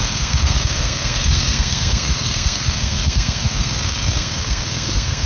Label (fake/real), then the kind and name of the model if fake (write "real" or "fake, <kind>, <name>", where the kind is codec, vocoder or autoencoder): fake, codec, SNAC